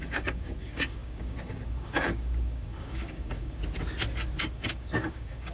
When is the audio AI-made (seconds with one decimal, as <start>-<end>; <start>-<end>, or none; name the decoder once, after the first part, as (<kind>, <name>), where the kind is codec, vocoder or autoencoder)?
0.0-3.6 (codec, DAC); 4.4-5.5